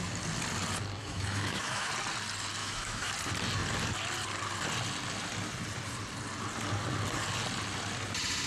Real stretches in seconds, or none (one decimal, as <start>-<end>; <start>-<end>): 0.0-1.0; 1.9-2.6; 3.1-8.5